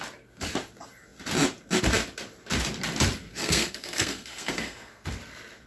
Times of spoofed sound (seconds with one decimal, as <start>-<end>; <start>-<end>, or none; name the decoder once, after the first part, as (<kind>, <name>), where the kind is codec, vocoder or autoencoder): 3.3-5.1 (codec, SNAC)